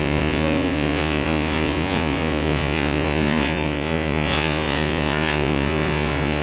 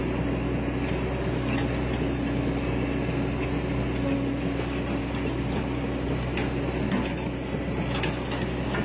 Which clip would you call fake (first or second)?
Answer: first